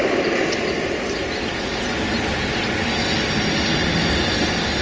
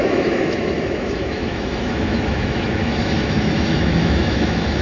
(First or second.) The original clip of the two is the first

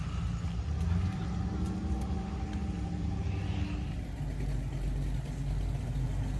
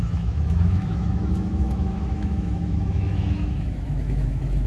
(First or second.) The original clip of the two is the first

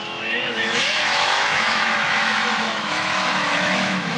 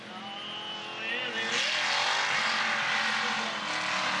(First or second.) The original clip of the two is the second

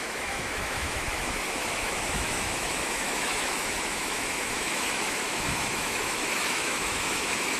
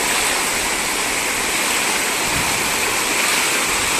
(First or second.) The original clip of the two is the second